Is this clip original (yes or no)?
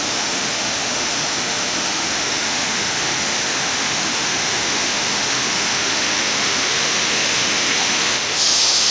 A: no